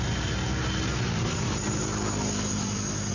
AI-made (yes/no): no